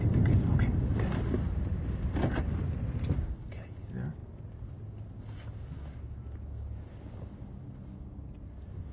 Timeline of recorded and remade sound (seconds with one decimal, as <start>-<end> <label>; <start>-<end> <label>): 0.0-8.9 recorded